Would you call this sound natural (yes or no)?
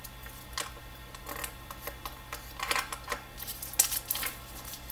yes